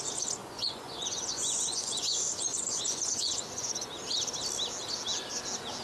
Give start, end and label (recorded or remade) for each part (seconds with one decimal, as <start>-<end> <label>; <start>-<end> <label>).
0.0-0.4 recorded; 0.4-3.9 remade; 3.9-5.8 recorded

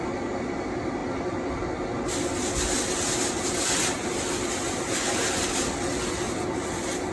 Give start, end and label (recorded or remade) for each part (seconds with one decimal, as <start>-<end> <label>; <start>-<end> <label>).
0.0-7.1 recorded

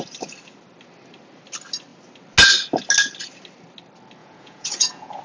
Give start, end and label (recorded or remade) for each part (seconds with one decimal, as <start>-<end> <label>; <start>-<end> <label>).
0.0-4.2 recorded; 4.2-5.2 remade

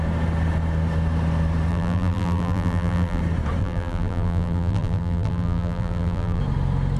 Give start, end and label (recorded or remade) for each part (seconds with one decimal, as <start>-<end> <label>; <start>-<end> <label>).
0.0-1.7 recorded; 1.7-3.2 remade; 3.2-3.6 recorded; 3.6-6.4 remade; 6.4-7.0 recorded

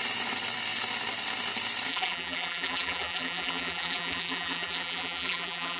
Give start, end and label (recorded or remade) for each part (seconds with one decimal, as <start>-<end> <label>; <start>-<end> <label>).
0.0-1.9 recorded; 1.9-5.8 remade

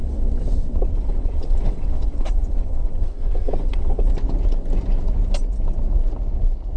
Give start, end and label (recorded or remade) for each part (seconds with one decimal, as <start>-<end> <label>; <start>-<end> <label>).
0.0-4.1 remade; 4.1-6.8 recorded

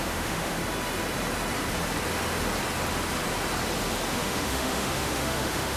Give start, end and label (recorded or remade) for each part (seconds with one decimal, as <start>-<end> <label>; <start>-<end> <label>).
0.0-0.6 remade; 0.6-4.1 recorded; 4.1-5.8 remade

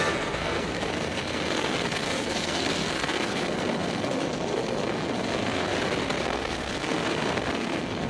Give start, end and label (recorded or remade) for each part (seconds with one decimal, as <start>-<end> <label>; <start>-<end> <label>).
0.0-5.7 remade; 5.7-6.2 recorded; 6.2-8.1 remade